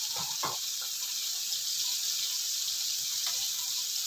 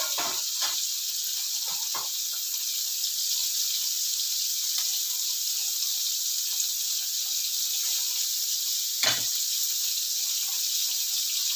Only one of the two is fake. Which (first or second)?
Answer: first